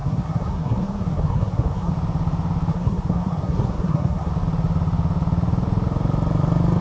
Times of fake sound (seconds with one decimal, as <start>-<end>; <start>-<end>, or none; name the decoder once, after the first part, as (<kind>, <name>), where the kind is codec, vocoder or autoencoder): 0.0-1.9 (codec, SNAC); 2.7-4.3

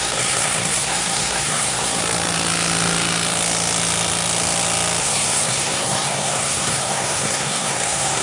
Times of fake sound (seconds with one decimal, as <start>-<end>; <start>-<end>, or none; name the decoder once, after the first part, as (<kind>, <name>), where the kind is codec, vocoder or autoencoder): 0.0-2.0 (codec, SNAC); 5.0-8.2

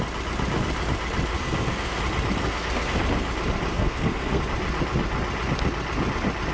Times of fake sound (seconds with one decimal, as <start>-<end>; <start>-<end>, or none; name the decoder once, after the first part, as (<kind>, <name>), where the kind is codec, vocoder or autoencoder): 1.3-2.0 (codec, SNAC); 2.4-3.0; 3.7-4.4

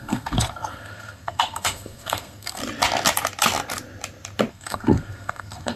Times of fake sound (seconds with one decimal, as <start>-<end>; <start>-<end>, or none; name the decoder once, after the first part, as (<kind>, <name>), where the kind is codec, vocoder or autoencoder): 0.0-2.6 (codec, SNAC); 4.5-5.8